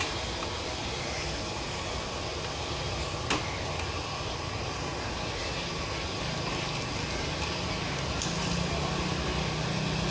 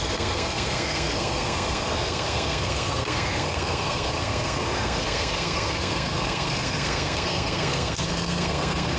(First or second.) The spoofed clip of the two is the second